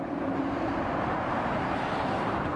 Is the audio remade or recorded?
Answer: remade